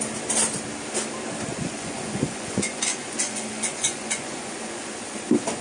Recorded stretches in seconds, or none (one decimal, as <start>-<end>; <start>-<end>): 0.0-1.5; 4.9-5.6